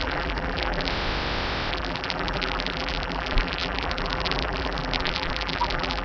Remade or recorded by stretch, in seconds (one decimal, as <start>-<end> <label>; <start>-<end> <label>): 0.0-0.9 remade; 0.9-1.7 recorded; 1.7-6.0 remade